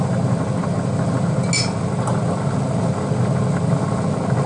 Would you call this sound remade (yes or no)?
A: no